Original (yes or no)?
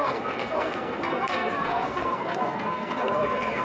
no